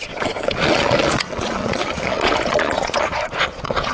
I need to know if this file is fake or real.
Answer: fake